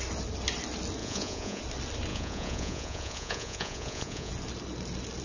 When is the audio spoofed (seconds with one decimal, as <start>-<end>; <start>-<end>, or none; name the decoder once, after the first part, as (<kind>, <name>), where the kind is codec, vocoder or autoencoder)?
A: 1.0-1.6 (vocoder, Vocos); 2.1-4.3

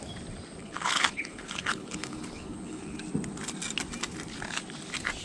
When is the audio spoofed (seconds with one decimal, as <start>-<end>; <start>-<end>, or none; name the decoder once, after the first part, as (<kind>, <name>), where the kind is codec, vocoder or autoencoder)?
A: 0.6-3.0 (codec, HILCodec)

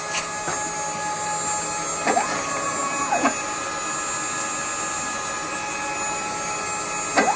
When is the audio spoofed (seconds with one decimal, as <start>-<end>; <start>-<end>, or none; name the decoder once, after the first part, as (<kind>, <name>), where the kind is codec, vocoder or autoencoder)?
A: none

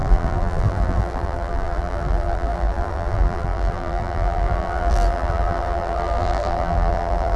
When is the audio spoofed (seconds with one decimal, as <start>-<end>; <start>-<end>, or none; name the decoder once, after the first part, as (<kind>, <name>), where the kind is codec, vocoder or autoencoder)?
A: 0.0-7.4 (vocoder, BigVGAN v2)

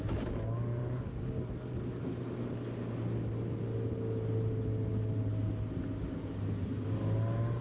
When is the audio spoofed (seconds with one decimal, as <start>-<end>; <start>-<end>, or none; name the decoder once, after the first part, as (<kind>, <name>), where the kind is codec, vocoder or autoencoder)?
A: none